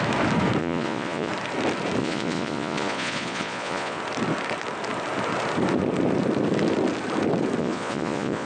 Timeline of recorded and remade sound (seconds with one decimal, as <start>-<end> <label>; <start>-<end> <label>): 0.0-0.6 recorded; 0.6-1.3 remade; 1.3-2.0 recorded; 2.0-4.0 remade; 4.0-7.6 recorded; 7.6-8.5 remade